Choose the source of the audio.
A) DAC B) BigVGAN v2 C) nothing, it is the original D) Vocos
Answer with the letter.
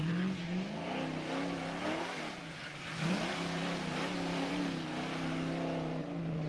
B